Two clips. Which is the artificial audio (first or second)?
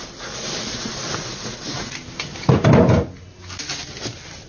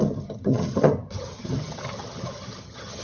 second